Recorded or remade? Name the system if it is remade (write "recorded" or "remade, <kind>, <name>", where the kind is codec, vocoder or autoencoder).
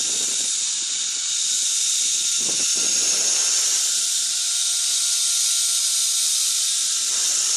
recorded